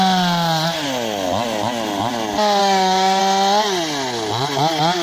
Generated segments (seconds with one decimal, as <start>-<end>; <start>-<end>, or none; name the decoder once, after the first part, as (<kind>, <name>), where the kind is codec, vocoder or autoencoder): 2.6-3.2 (codec, DAC)